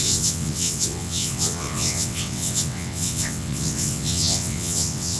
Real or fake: fake